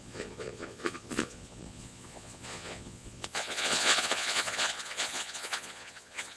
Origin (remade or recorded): remade